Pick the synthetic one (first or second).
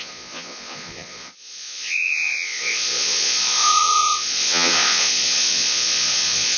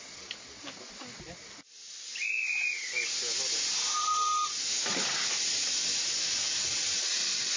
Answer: first